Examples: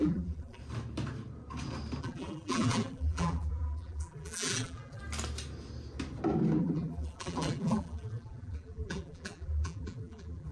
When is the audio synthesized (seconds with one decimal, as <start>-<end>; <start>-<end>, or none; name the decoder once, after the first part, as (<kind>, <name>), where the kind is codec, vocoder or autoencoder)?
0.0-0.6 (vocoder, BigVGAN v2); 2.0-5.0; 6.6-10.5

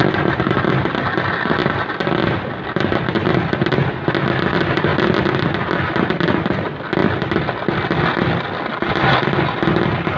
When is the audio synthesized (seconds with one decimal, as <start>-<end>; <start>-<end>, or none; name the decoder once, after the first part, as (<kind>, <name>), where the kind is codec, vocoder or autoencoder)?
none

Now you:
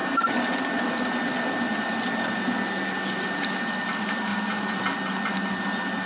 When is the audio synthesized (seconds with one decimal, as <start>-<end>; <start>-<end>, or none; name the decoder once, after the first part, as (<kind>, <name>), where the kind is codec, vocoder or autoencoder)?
4.3-4.8 (vocoder, BigVGAN v2)

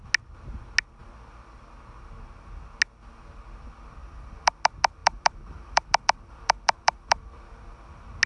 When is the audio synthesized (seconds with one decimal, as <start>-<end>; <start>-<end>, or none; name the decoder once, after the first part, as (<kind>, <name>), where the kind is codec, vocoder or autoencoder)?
4.0-4.5 (vocoder, BigVGAN v2); 5.0-7.4

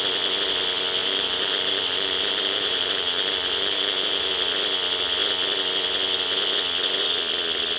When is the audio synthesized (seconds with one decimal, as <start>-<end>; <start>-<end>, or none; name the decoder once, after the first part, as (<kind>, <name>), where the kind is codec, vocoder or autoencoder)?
1.0-4.3 (vocoder, BigVGAN v2)